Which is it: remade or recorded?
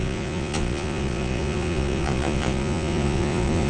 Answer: remade